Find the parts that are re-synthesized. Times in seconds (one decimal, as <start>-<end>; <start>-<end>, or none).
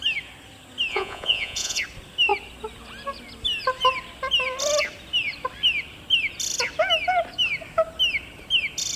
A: 0.9-1.8